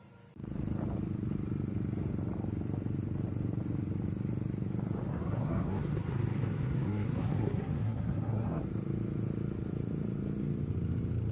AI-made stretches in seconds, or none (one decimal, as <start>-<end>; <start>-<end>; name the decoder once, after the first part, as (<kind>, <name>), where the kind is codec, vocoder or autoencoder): 5.1-8.6 (codec, SNAC)